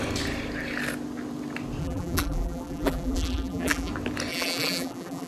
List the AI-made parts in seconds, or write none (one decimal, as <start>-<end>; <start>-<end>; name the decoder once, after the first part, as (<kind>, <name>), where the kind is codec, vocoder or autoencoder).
1.8-3.9 (vocoder, BigVGAN v2); 4.3-5.3